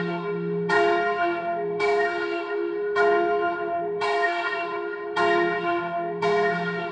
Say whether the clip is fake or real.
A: fake